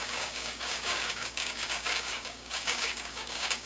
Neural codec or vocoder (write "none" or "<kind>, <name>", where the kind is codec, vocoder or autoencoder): codec, DAC